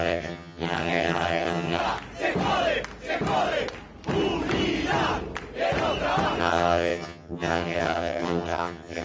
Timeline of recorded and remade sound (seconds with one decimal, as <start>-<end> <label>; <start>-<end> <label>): 0.0-1.8 remade; 1.8-6.4 recorded; 6.4-9.0 remade